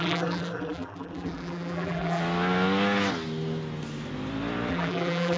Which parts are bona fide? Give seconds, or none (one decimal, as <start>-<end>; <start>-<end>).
2.2-4.7